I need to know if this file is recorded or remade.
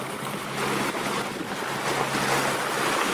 recorded